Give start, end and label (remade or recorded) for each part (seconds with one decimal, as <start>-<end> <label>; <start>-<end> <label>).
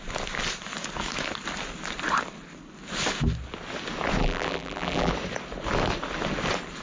0.0-4.2 recorded; 4.2-5.1 remade; 5.1-6.8 recorded